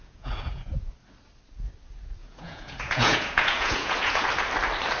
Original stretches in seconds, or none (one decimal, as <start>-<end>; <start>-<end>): 0.9-2.2; 4.3-5.0

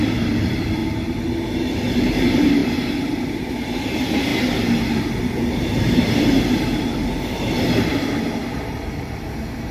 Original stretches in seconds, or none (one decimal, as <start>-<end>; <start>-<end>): 0.8-1.9; 4.3-5.2

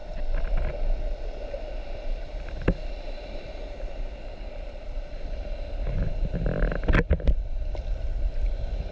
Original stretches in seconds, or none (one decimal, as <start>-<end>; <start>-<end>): 0.0-8.9

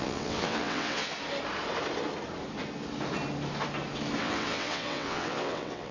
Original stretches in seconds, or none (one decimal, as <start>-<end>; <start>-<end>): 1.0-4.2

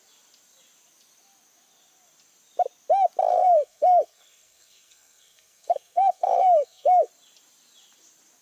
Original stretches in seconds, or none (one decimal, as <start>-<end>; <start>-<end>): 0.0-3.3; 7.1-8.4

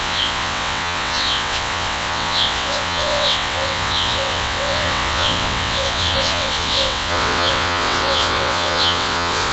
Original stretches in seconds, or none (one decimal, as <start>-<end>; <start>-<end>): none

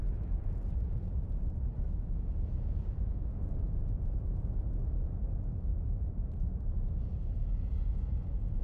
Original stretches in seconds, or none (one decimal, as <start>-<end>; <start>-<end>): 5.7-7.3

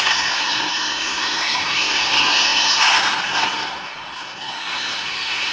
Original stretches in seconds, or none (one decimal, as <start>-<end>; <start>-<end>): none